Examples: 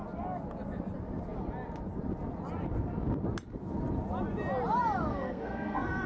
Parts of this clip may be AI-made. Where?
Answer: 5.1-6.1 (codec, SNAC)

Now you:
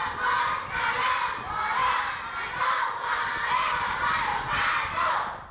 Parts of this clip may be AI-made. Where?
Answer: none

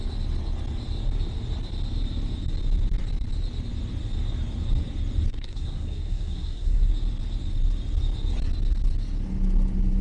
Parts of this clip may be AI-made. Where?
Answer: 5.3-6.9 (codec, SNAC)

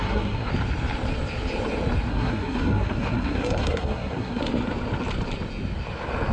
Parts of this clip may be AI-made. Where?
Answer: 0.0-0.5 (codec, SNAC); 2.1-4.4

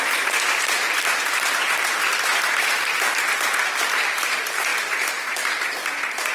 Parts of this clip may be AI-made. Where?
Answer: none

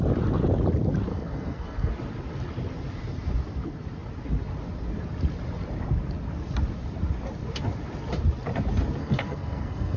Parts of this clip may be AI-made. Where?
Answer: 1.1-1.9 (codec, SNAC); 9.0-10.0